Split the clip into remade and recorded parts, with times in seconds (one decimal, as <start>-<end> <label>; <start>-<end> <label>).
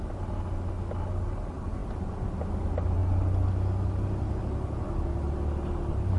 0.0-6.2 recorded